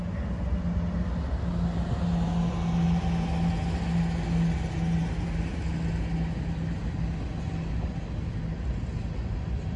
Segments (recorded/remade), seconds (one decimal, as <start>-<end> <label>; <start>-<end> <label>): 0.0-9.8 recorded